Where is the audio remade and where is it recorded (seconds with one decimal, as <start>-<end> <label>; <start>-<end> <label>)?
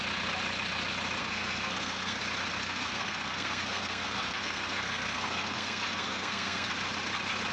0.0-1.2 recorded; 1.2-2.2 remade; 2.2-2.6 recorded; 2.6-6.7 remade; 6.7-7.5 recorded